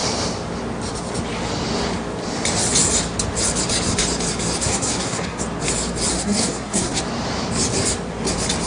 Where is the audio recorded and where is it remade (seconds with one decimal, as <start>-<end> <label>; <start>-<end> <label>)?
0.0-4.6 recorded; 4.6-5.4 remade; 5.4-6.1 recorded; 6.1-7.0 remade; 7.0-8.7 recorded

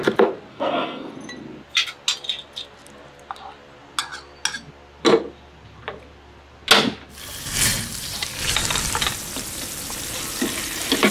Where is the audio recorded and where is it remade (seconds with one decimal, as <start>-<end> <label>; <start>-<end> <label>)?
0.0-0.5 recorded; 0.5-1.1 remade; 1.1-11.1 recorded

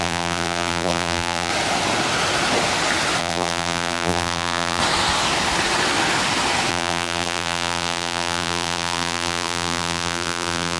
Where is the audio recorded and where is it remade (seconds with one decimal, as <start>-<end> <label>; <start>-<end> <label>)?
0.0-1.5 remade; 1.5-3.2 recorded; 3.2-4.8 remade; 4.8-6.7 recorded; 6.7-10.8 remade

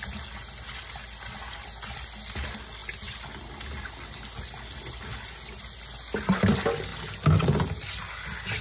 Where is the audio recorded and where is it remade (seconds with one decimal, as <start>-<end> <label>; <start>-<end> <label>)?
0.0-8.6 recorded

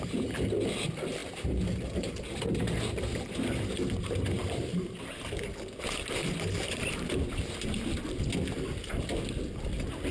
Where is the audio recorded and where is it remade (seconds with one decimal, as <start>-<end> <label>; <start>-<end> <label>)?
0.0-4.4 recorded; 4.4-5.4 remade; 5.4-10.1 recorded

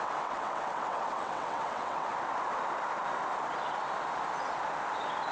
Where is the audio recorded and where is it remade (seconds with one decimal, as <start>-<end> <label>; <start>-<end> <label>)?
0.0-2.1 remade; 2.1-5.3 recorded

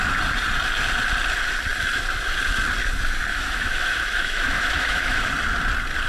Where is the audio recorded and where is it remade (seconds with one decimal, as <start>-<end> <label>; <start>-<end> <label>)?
0.0-3.3 recorded; 3.3-5.3 remade; 5.3-6.1 recorded

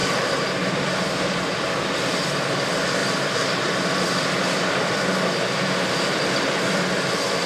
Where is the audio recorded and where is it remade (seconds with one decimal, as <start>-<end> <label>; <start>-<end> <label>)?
0.0-1.5 remade; 1.5-3.0 recorded; 3.0-7.1 remade; 7.1-7.5 recorded